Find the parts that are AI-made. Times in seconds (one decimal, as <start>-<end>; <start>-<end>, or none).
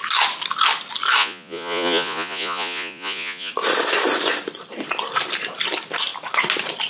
1.2-3.5